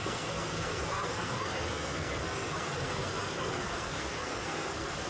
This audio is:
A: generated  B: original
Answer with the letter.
A